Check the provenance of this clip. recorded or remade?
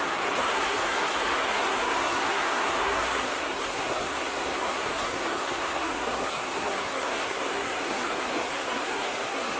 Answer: remade